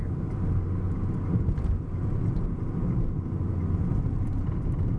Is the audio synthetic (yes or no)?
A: no